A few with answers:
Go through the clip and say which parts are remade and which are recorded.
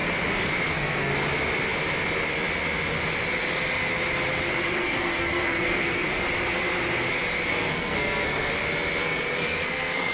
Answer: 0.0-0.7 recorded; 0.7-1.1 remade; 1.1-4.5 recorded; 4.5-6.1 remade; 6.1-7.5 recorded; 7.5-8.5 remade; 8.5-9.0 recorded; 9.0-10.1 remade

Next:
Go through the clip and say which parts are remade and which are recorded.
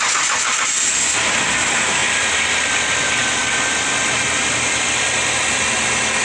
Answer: 0.0-6.2 recorded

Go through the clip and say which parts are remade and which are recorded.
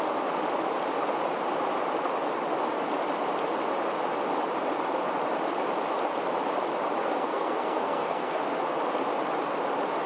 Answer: 0.0-7.0 recorded; 7.0-8.4 remade; 8.4-10.1 recorded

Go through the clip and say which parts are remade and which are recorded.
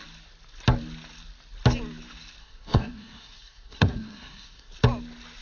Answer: 0.0-2.4 recorded; 2.4-4.7 remade; 4.7-5.4 recorded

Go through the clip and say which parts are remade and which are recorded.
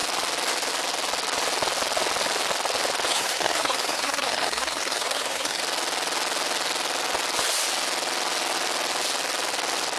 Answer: 0.0-3.1 recorded; 3.1-5.6 remade; 5.6-10.0 recorded